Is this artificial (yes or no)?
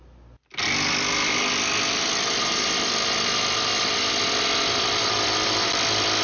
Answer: no